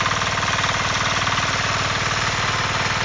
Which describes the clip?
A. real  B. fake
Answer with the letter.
A